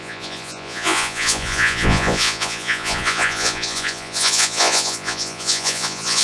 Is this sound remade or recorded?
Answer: remade